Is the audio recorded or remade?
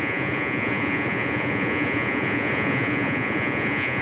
remade